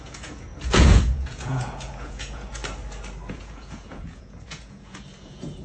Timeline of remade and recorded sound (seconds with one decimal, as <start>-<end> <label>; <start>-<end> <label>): 0.0-2.6 remade; 2.6-3.3 recorded; 3.3-5.6 remade